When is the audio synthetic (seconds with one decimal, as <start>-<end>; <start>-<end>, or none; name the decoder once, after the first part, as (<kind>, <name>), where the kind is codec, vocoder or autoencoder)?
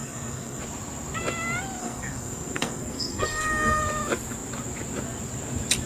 0.0-0.6 (codec, SNAC); 1.8-3.8